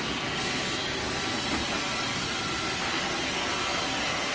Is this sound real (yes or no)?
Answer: yes